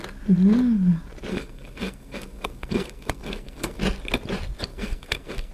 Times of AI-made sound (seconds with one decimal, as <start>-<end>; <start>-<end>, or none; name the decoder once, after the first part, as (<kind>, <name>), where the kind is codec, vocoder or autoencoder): 1.3-3.8 (codec, SNAC); 4.7-5.5